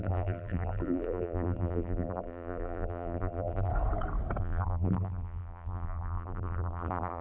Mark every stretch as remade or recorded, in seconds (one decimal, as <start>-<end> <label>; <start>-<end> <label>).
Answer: 0.0-3.7 remade; 3.7-4.4 recorded; 4.4-7.2 remade